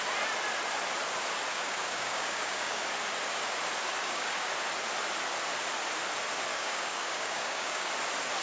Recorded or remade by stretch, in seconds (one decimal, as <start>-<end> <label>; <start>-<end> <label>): 0.0-1.5 recorded; 1.5-2.8 remade; 2.8-4.0 recorded; 4.0-4.5 remade; 4.5-6.5 recorded; 6.5-7.9 remade; 7.9-8.4 recorded